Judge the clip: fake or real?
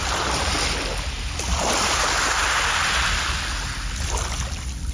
real